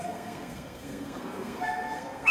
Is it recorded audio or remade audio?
remade